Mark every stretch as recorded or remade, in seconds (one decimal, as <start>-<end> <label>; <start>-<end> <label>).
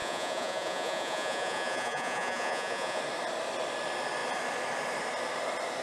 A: 0.0-3.0 remade; 3.0-5.8 recorded